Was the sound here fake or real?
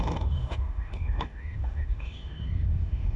fake